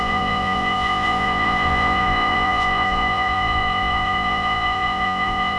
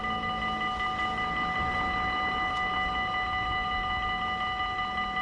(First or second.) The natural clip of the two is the second